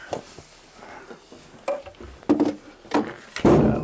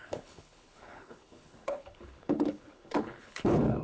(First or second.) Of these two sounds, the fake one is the second